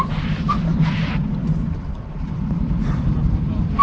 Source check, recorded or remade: remade